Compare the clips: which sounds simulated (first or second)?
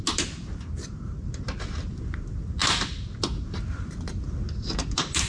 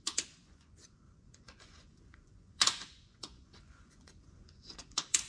second